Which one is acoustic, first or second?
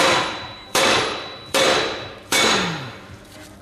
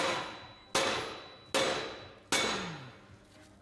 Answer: second